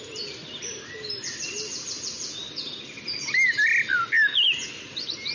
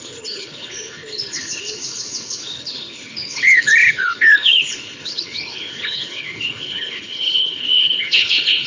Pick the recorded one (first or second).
first